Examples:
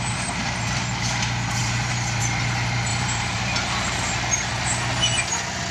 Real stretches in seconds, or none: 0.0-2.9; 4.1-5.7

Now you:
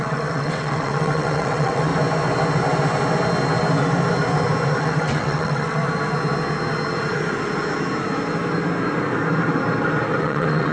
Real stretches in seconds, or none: 1.9-4.8; 5.8-10.2

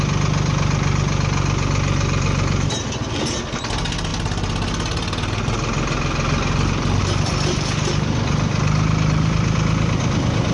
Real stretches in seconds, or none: 0.0-10.5

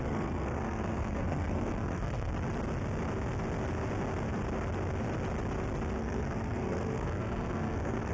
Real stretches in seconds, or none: 2.3-6.0

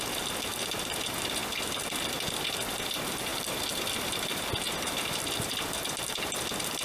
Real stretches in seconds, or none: 0.0-6.8

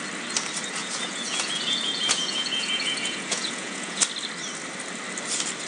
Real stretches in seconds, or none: 0.0-0.8; 4.0-5.7

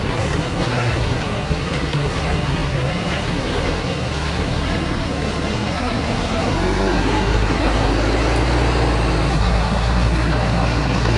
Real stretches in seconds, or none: 7.9-9.3